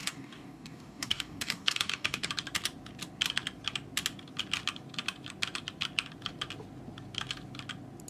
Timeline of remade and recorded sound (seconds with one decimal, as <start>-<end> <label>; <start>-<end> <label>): 0.0-2.3 remade; 2.3-8.1 recorded